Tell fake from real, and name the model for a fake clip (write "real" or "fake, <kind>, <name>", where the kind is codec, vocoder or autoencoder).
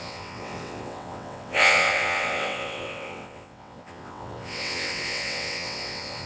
fake, vocoder, WaveNeXt